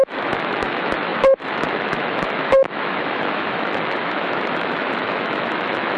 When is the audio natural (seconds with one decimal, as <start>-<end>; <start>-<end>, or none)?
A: none